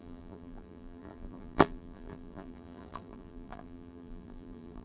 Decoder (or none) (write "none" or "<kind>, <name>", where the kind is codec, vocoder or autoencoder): vocoder, BigVGAN v2